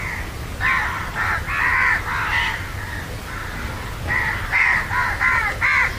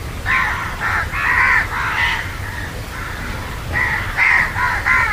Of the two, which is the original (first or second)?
first